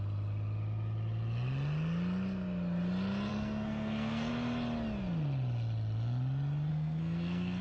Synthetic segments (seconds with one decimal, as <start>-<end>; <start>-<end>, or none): 3.3-4.3; 6.7-7.6

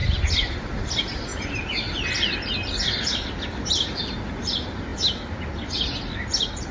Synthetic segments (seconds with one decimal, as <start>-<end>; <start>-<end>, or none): none